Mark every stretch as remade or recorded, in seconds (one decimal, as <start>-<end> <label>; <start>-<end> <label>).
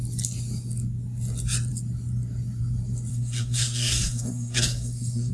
0.0-3.1 recorded; 3.1-5.3 remade